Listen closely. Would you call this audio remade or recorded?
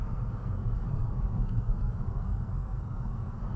remade